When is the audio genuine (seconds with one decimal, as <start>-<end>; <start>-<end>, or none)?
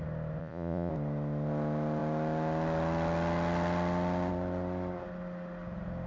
0.0-0.4; 0.9-6.1